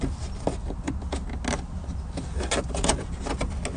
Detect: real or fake real